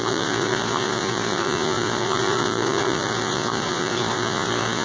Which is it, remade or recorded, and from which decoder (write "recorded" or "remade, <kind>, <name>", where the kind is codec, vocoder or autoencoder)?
remade, vocoder, Vocos